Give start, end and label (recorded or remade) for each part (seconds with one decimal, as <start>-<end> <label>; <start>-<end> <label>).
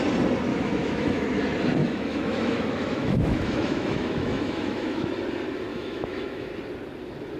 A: 0.0-0.5 recorded; 0.5-1.4 remade; 1.4-1.8 recorded; 1.8-5.1 remade; 5.1-5.7 recorded; 5.7-6.5 remade; 6.5-7.4 recorded